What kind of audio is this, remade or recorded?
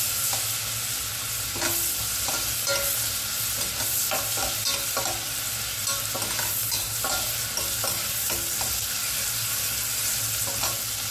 recorded